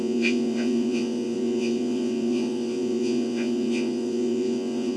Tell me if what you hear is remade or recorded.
remade